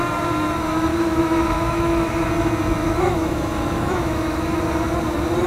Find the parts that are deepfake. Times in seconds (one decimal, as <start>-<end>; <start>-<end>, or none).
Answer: 0.9-2.3; 2.8-4.6